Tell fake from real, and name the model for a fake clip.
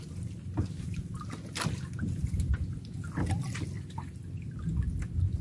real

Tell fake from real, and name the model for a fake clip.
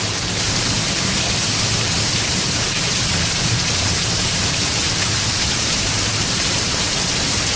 fake, vocoder, BigVGAN v2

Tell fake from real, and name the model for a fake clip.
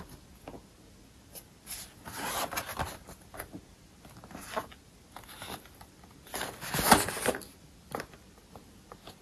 real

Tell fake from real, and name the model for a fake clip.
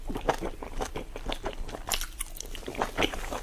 real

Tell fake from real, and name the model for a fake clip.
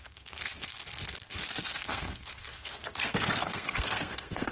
fake, codec, SNAC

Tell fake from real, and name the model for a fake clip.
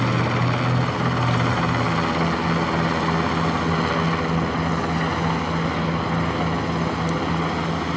real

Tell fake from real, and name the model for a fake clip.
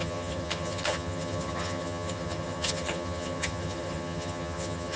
fake, vocoder, HiFi-GAN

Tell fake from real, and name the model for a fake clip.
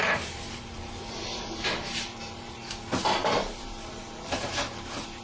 fake, vocoder, BigVGAN v2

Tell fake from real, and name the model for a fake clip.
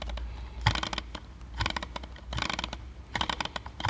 real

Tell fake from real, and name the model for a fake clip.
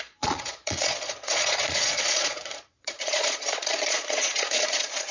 fake, vocoder, Vocos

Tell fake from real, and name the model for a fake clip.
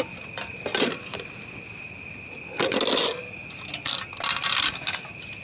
real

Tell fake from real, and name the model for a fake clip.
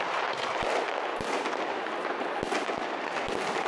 real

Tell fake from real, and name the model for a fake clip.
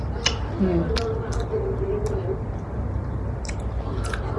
real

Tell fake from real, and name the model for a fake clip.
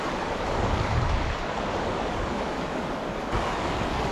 fake, codec, DAC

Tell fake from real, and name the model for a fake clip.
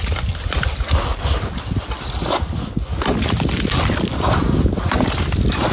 real